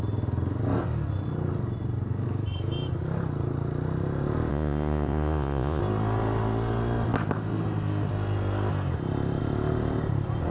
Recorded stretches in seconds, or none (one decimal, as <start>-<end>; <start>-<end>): 0.0-4.5; 5.8-10.5